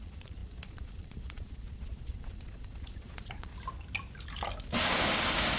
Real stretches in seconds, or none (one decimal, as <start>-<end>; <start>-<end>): 3.5-5.6